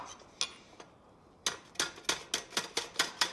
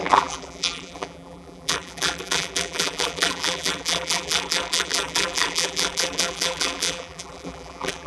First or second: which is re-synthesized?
second